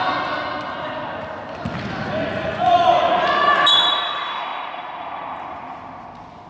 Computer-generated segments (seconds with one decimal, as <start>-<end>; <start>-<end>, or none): 2.2-3.2; 4.5-5.4